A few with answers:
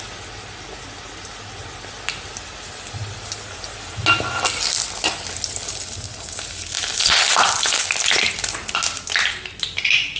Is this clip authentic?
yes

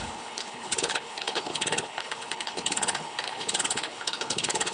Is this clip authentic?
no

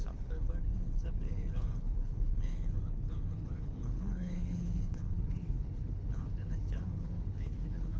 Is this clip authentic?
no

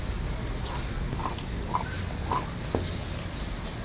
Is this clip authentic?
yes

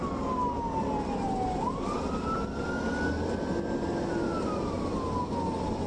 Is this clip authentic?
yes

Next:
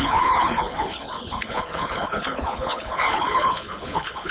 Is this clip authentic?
no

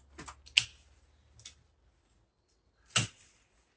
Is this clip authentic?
yes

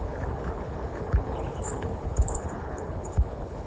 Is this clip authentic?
no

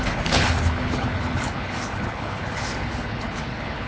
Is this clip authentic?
no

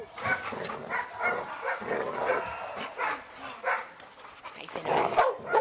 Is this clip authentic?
yes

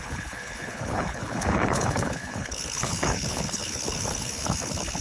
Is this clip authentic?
no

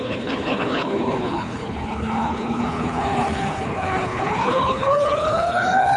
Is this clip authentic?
no